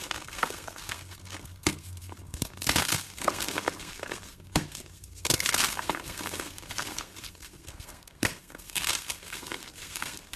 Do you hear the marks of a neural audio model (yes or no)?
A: yes